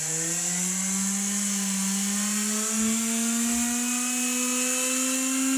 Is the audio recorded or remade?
recorded